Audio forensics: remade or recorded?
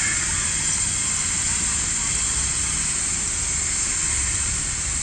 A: recorded